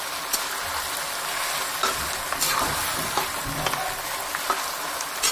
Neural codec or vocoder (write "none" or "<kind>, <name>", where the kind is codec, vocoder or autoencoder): none